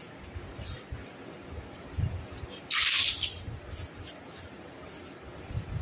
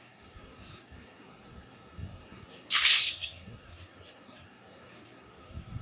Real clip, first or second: first